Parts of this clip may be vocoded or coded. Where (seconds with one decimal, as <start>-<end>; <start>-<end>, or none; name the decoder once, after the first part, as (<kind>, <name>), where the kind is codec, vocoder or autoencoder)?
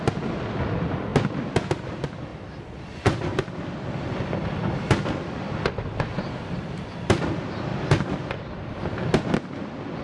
2.3-7.2 (vocoder, BigVGAN v2); 7.7-9.2